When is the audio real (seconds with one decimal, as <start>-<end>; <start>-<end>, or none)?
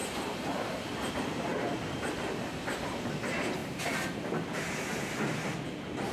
0.0-6.1